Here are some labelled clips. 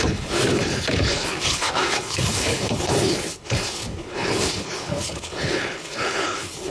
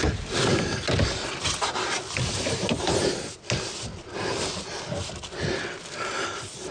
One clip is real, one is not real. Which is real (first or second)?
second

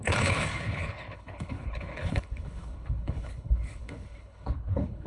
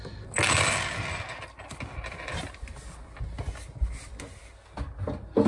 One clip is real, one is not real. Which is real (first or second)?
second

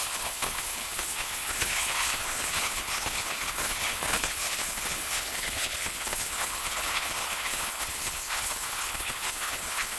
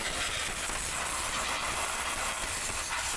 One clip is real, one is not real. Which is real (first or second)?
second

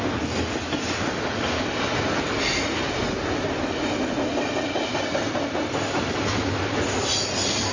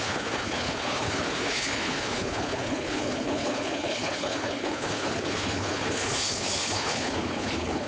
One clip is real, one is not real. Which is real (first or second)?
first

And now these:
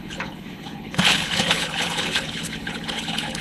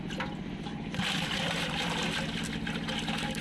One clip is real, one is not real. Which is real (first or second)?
second